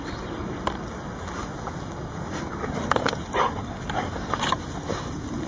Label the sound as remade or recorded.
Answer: recorded